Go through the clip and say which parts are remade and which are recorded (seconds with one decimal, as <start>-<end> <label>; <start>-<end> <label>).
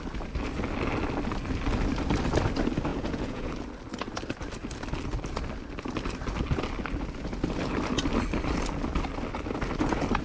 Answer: 0.0-2.9 recorded; 2.9-3.5 remade; 3.5-10.2 recorded